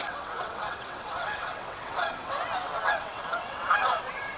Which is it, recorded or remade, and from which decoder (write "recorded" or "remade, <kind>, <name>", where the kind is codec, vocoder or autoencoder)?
remade, vocoder, WaveNeXt